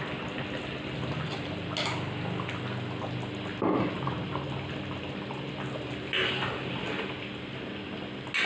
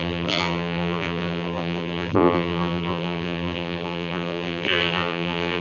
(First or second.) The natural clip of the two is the first